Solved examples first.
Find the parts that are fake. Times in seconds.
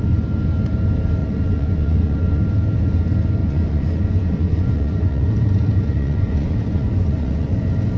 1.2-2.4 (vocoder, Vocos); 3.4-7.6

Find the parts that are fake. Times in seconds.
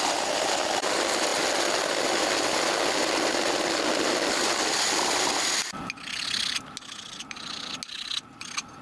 none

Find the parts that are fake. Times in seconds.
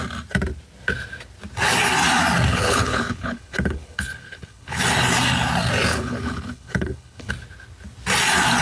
2.5-4.8 (codec, HILCodec); 5.9-7.3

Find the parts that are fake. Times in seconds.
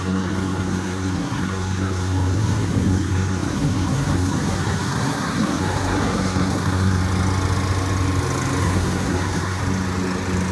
0.0-7.0 (codec, SNAC); 8.6-9.6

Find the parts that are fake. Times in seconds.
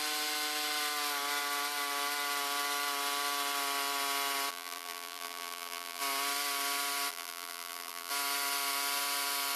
4.5-6.0 (vocoder, BigVGAN v2); 7.1-8.1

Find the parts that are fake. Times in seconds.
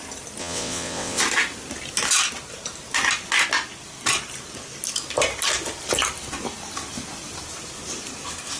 0.4-1.2 (vocoder, WaveNeXt)